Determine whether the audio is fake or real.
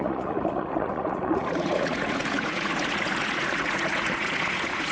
fake